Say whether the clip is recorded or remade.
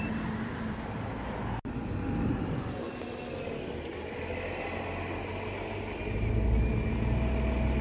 recorded